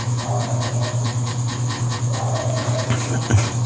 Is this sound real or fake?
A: real